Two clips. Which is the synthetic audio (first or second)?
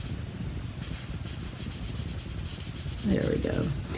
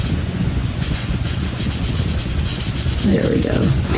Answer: second